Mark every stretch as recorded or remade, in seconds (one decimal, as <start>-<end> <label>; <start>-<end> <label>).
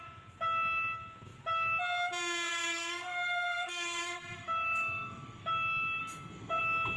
0.0-2.5 recorded; 2.5-5.4 remade; 5.4-6.0 recorded; 6.0-6.6 remade; 6.6-7.0 recorded